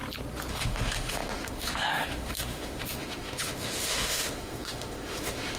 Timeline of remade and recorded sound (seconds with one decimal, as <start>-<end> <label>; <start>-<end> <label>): 0.0-0.5 recorded; 0.5-5.6 remade